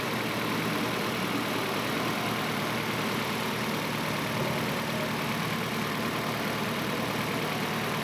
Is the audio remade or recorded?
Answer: recorded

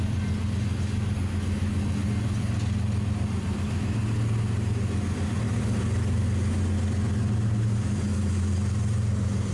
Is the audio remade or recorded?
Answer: recorded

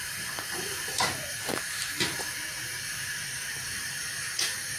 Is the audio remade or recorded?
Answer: remade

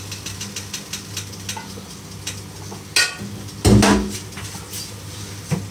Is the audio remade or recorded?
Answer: recorded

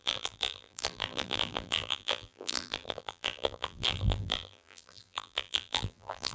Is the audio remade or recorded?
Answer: remade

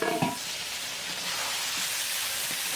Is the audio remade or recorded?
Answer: remade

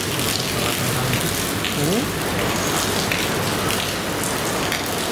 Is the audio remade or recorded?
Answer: recorded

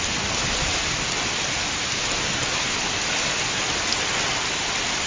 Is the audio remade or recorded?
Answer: recorded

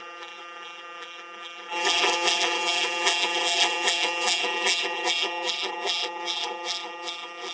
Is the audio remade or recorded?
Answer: remade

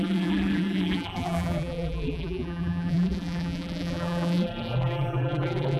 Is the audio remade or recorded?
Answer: remade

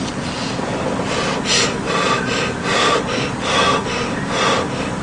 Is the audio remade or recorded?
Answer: recorded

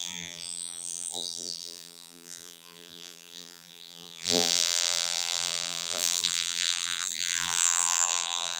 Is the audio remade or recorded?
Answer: remade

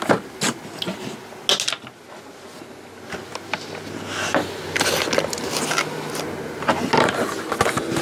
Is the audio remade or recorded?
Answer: recorded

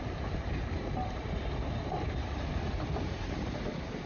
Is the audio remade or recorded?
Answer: remade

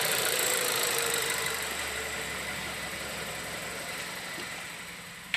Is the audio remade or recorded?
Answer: remade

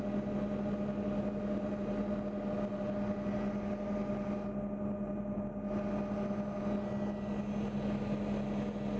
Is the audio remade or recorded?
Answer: recorded